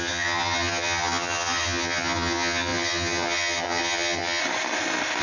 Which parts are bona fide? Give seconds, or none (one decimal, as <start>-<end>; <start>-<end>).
4.4-5.2